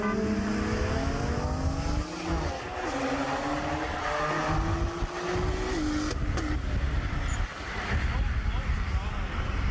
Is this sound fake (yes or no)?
no